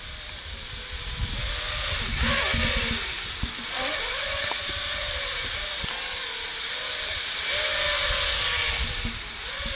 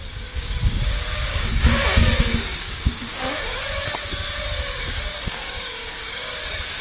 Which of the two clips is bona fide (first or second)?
first